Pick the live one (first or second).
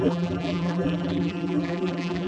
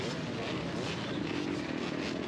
second